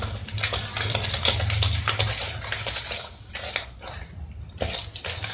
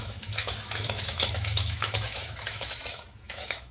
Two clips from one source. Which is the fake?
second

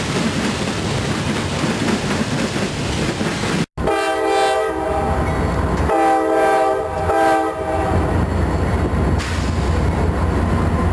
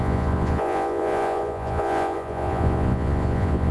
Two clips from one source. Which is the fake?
second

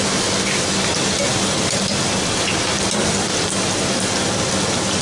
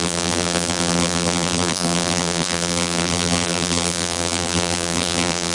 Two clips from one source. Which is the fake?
second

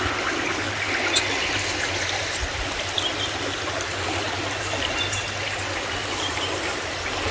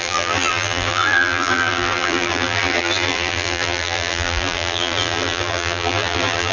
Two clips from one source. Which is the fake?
second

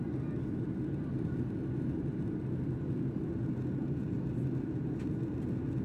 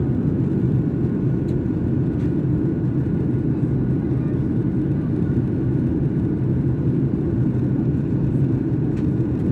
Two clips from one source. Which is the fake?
second